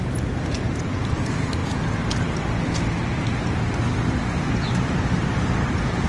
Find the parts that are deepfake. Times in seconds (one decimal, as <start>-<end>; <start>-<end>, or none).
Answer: 0.0-1.6; 4.7-6.1